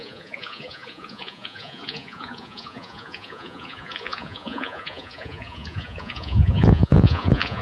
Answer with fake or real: fake